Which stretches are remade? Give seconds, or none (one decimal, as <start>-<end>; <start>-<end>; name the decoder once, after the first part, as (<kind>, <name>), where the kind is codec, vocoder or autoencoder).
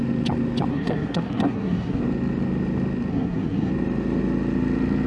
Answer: 0.7-2.0 (codec, SNAC); 3.1-3.7